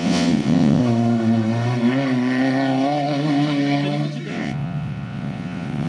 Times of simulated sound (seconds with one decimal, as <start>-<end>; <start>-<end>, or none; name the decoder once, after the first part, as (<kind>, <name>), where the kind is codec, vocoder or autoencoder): 0.0-0.8 (vocoder, WaveNeXt); 4.3-5.9